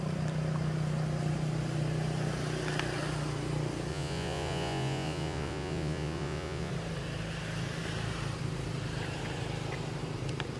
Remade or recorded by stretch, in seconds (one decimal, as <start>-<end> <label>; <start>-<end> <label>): 0.0-3.9 recorded; 3.9-6.7 remade; 6.7-10.6 recorded